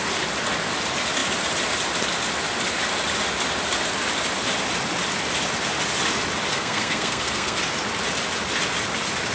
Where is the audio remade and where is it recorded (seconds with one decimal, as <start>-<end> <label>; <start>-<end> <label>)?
0.0-6.5 recorded; 6.5-7.6 remade; 7.6-9.3 recorded